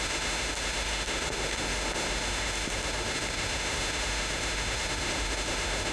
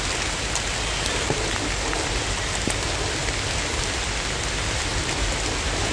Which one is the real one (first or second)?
second